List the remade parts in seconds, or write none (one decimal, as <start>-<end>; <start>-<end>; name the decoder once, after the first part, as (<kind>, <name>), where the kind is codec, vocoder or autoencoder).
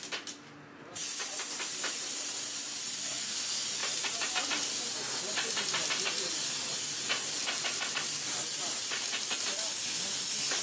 3.8-4.3 (vocoder, BigVGAN v2)